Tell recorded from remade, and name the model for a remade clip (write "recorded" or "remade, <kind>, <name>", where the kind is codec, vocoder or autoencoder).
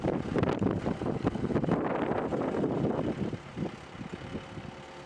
recorded